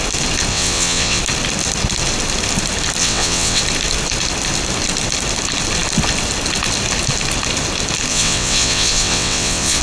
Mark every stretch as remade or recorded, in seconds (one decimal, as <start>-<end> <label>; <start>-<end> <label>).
0.0-0.5 recorded; 0.5-1.2 remade; 1.2-3.0 recorded; 3.0-3.6 remade; 3.6-8.1 recorded; 8.1-9.8 remade